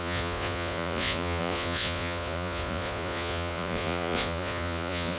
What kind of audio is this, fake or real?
fake